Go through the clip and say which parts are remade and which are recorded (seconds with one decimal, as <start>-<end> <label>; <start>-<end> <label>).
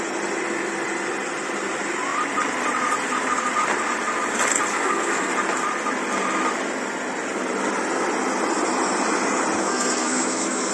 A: 0.0-4.7 recorded; 4.7-5.3 remade; 5.3-9.6 recorded; 9.6-10.7 remade